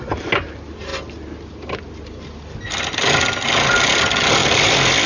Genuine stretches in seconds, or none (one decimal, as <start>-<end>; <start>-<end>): 0.0-5.1